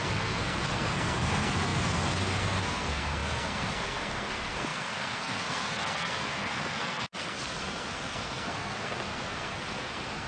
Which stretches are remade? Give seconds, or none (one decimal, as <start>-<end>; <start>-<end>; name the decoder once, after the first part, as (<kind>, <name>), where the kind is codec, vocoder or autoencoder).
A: 0.0-10.3 (codec, SNAC)

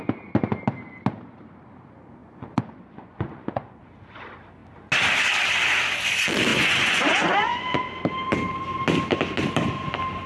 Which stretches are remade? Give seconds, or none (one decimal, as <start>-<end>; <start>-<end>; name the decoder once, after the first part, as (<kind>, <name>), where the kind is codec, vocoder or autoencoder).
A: 2.2-3.8 (vocoder, Vocos); 6.5-7.8

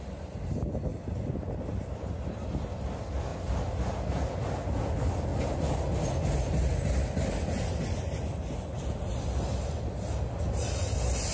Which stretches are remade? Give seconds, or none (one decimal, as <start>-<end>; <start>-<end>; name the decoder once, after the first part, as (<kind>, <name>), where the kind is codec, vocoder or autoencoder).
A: none

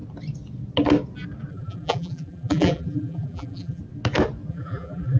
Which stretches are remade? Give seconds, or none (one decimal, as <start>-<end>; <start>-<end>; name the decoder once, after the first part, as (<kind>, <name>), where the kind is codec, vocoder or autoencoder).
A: 1.5-3.8 (vocoder, BigVGAN v2); 4.5-5.2

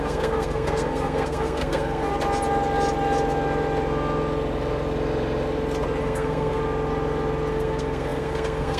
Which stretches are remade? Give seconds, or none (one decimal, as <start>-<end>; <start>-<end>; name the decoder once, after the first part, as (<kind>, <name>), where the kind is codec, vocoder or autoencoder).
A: 0.0-2.1 (codec, SNAC); 6.0-6.6; 7.5-8.8

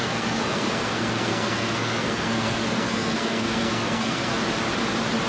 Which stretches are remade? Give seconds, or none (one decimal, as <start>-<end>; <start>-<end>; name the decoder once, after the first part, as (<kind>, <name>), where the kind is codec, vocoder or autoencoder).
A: 0.0-4.3 (codec, SNAC)

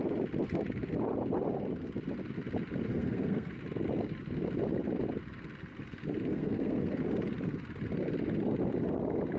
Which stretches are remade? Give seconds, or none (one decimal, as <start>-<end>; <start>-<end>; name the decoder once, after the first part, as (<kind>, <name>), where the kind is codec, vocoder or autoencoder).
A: 2.9-3.5 (codec, SNAC); 6.3-7.0

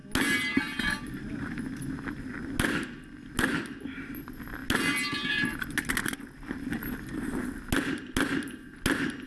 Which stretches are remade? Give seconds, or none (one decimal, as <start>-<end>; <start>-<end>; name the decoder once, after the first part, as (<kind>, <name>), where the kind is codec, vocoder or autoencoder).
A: none